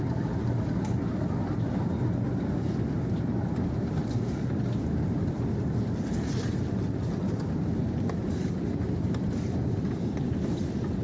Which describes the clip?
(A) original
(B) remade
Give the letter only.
A